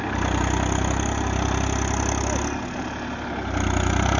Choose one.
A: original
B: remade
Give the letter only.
A